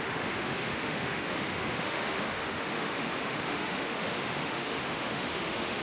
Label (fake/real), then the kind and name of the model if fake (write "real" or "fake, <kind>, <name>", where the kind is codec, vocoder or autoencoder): fake, autoencoder, DAC-VAE